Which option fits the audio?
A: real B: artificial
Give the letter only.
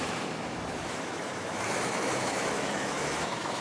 B